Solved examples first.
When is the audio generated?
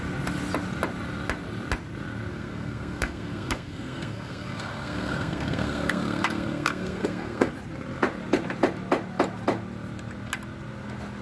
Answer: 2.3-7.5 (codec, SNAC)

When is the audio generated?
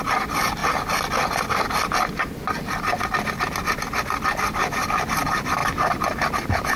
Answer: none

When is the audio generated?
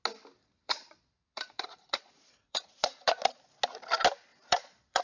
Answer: 0.4-3.4 (vocoder, Vocos); 4.3-5.0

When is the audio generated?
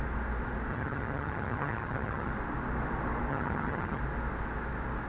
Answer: 0.7-2.3 (vocoder, HiFi-GAN); 3.3-4.0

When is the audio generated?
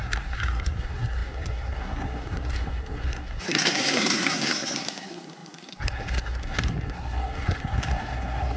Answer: 0.0-8.6 (codec, SNAC)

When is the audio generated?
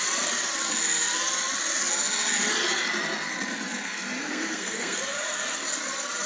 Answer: 4.2-5.0 (codec, SNAC)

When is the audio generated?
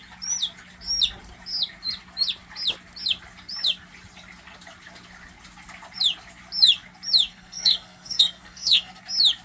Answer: 7.3-9.0 (codec, SNAC)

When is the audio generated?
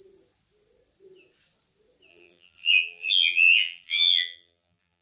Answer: 2.1-5.0 (vocoder, BigVGAN v2)